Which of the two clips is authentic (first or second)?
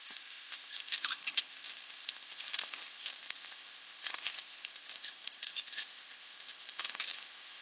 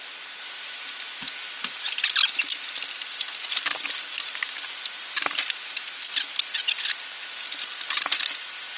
second